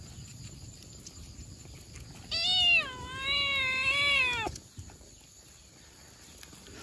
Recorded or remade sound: recorded